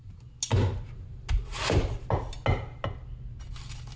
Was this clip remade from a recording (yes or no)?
no